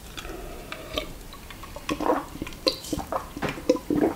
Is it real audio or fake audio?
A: fake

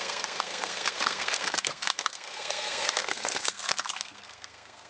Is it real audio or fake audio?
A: fake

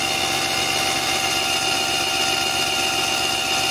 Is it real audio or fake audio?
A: real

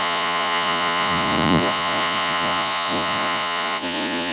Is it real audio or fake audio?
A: fake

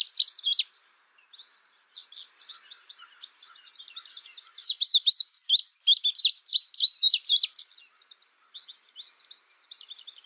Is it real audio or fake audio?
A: real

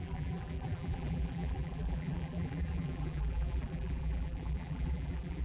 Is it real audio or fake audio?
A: fake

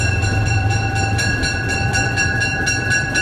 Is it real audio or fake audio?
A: fake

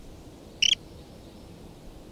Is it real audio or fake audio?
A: real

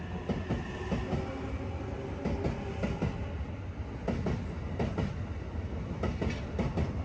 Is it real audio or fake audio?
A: real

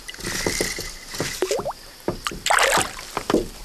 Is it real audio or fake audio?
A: real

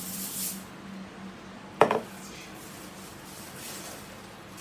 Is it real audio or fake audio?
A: fake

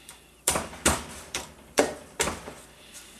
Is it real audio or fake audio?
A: fake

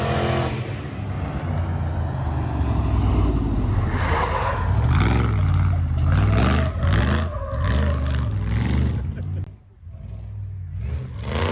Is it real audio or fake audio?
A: real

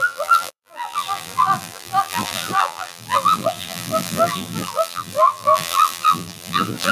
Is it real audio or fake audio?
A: fake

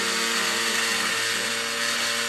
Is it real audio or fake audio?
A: real